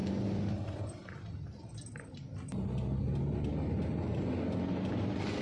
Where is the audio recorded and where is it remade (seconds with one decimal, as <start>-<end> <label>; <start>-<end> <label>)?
0.0-5.4 recorded